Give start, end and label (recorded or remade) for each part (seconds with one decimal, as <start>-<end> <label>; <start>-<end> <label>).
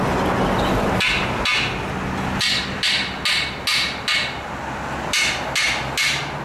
0.0-6.4 recorded